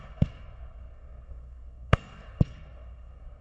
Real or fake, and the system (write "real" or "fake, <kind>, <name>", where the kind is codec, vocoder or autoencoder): fake, codec, SNAC